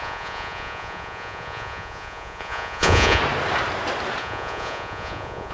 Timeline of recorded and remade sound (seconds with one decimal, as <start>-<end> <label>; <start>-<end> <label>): 0.0-3.2 remade; 3.2-4.2 recorded; 4.2-5.5 remade

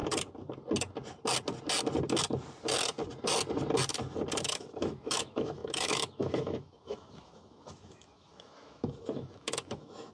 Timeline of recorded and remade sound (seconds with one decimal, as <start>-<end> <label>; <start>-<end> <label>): 0.0-4.4 recorded; 4.4-10.1 remade

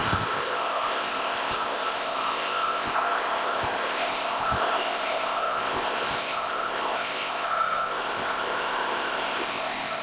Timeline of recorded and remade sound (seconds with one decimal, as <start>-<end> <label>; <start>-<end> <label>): 0.0-10.0 remade

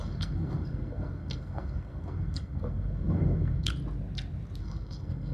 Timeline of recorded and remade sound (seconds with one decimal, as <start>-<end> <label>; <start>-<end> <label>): 0.0-3.7 remade; 3.7-4.6 recorded; 4.6-5.3 remade

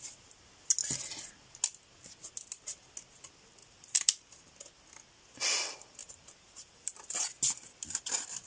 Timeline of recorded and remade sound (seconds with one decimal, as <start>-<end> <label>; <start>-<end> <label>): 0.0-3.6 recorded; 3.6-4.5 remade; 4.5-6.0 recorded; 6.0-7.0 remade; 7.0-8.5 recorded